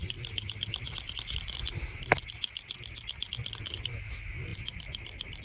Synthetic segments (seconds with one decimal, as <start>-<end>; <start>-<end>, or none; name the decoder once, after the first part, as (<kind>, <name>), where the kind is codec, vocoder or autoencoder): 4.5-5.4 (vocoder, BigVGAN v2)